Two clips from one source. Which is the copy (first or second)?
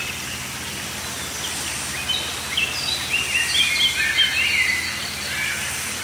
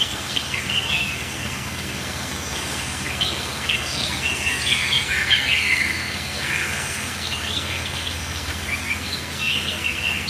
second